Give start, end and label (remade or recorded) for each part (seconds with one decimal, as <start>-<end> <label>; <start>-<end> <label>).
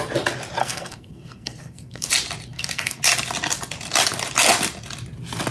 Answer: 0.0-0.6 recorded; 0.6-2.1 remade; 2.1-2.5 recorded; 2.5-3.0 remade; 3.0-5.5 recorded